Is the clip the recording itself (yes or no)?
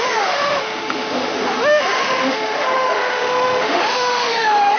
no